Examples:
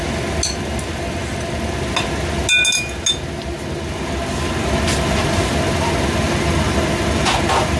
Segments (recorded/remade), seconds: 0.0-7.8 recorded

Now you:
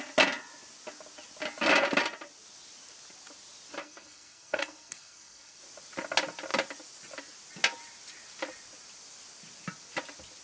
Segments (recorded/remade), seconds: 0.0-3.8 recorded; 3.8-5.6 remade; 5.6-10.4 recorded

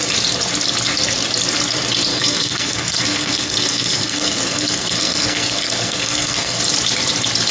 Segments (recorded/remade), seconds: 0.0-2.1 recorded; 2.1-6.6 remade; 6.6-7.5 recorded

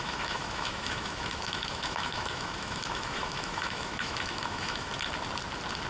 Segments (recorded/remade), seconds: 0.0-4.9 remade; 4.9-5.9 recorded